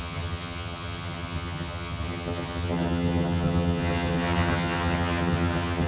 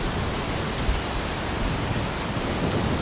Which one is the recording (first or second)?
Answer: second